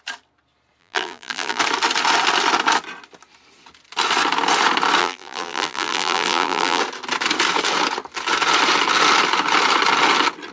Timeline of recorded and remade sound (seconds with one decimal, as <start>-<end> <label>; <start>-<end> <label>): 0.0-0.8 recorded; 0.8-1.6 remade; 1.6-5.0 recorded; 5.0-6.8 remade; 6.8-10.5 recorded